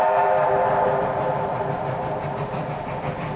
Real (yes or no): yes